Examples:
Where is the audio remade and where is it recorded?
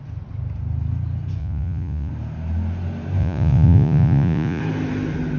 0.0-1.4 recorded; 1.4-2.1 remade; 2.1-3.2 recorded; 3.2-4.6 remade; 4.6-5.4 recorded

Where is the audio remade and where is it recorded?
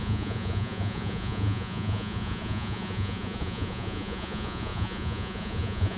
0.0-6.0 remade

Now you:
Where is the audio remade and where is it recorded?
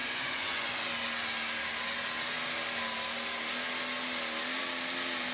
0.0-0.9 remade; 0.9-5.3 recorded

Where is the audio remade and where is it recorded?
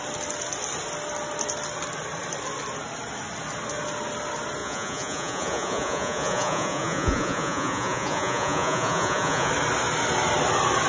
0.0-4.6 recorded; 4.6-9.5 remade; 9.5-10.9 recorded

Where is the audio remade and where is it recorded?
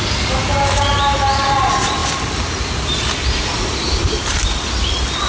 0.0-5.3 recorded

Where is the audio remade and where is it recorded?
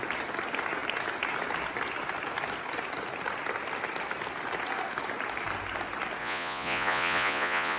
0.0-6.2 recorded; 6.2-7.8 remade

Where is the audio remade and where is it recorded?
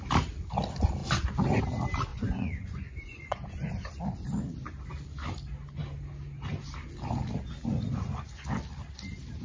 0.0-2.1 recorded; 2.1-3.7 remade; 3.7-9.4 recorded